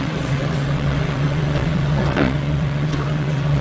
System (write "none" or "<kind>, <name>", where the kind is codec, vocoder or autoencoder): vocoder, WaveNeXt